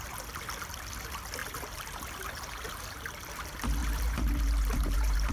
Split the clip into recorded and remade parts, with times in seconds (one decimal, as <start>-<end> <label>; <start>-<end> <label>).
0.0-1.4 recorded; 1.4-2.0 remade; 2.0-3.8 recorded; 3.8-5.3 remade